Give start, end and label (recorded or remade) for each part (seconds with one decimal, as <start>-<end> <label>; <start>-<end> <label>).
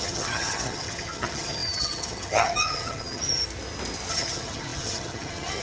0.0-3.4 remade; 3.4-4.1 recorded; 4.1-5.6 remade